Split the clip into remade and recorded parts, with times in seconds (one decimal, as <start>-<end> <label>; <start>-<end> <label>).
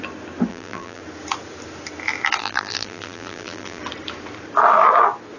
0.0-0.5 recorded; 0.5-1.0 remade; 1.0-2.4 recorded; 2.4-3.8 remade; 3.8-5.4 recorded